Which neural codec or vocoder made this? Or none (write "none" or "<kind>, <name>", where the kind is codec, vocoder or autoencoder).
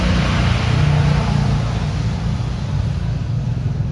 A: none